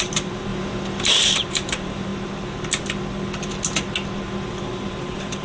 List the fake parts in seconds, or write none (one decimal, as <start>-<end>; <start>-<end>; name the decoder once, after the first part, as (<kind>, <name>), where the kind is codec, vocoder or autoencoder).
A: 0.0-0.5 (vocoder, BigVGAN v2); 1.1-2.1; 4.6-5.4